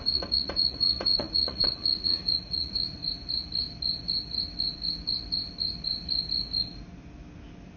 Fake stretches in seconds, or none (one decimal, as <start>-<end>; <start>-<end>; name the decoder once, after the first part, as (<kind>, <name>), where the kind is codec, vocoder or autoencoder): 0.0-3.0 (vocoder, Vocos)

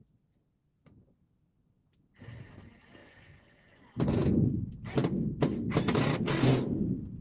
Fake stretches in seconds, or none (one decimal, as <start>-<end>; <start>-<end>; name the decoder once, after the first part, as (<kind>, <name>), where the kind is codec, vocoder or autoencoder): 3.0-4.5 (vocoder, Vocos)

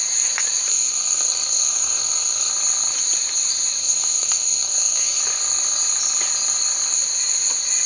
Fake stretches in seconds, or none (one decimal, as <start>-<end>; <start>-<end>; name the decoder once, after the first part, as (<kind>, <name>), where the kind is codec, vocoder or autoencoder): 0.7-2.5 (codec, SNAC); 3.8-5.2

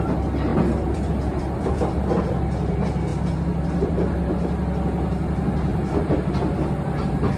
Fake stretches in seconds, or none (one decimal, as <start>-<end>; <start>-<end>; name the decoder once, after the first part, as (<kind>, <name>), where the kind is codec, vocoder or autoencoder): 0.5-2.0 (vocoder, BigVGAN v2); 3.1-4.3; 5.7-6.3

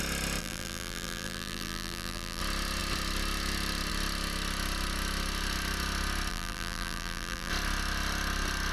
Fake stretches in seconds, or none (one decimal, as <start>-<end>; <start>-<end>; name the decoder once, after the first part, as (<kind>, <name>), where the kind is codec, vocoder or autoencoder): 0.4-2.4 (vocoder, BigVGAN v2); 6.3-7.5

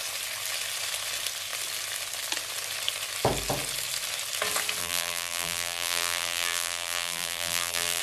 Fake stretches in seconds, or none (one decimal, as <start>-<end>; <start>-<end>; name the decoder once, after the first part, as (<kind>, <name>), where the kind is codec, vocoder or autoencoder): 4.8-8.0 (vocoder, BigVGAN v2)

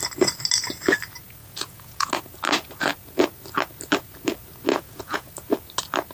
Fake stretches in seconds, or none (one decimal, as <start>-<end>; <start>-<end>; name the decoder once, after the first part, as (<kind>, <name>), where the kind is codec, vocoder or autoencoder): 1.4-2.1 (vocoder, Vocos); 4.7-5.3